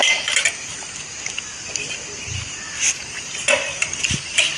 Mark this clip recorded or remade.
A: recorded